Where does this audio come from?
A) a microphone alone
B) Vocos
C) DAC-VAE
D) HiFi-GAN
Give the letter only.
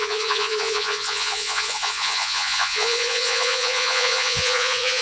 B